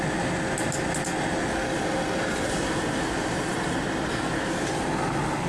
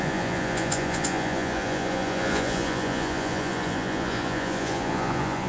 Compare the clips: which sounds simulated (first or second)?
second